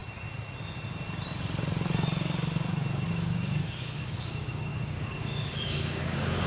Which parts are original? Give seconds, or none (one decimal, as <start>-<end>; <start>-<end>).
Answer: 0.0-3.1